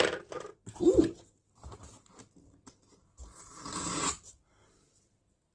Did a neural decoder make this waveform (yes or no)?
no